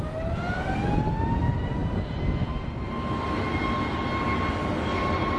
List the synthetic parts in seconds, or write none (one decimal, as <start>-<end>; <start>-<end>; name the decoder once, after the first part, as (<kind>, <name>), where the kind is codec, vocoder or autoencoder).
none